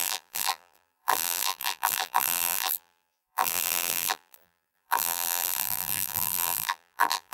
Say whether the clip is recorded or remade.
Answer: remade